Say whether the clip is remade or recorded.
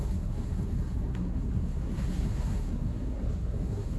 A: remade